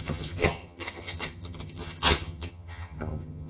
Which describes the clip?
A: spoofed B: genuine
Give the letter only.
A